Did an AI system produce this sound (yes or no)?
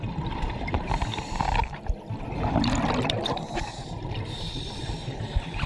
no